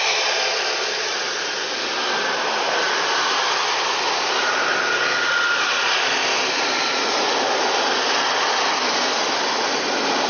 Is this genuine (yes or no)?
yes